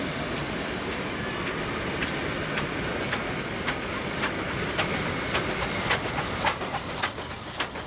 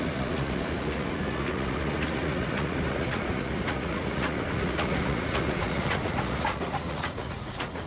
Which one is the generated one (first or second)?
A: second